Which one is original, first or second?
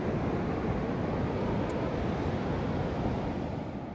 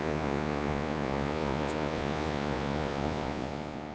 first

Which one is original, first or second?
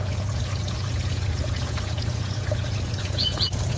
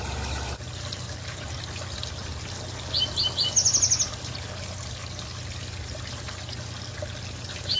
second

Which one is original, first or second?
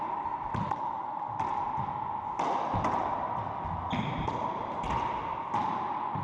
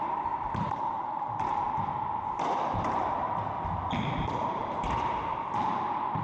first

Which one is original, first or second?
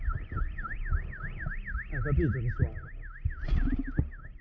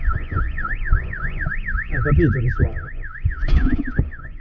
first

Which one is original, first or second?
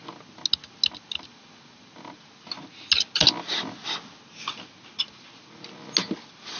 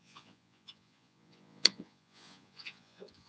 first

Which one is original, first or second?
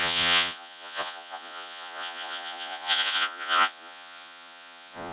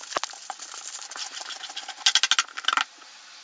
second